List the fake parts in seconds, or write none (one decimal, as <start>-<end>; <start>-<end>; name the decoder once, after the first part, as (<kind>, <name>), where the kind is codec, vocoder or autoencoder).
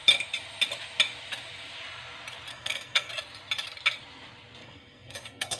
2.5-3.1 (codec, SNAC); 4.6-5.6